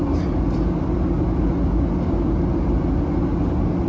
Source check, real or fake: real